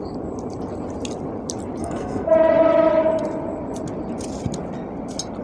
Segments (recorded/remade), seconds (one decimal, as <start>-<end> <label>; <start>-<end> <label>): 0.0-1.8 recorded; 1.8-2.3 remade; 2.3-5.4 recorded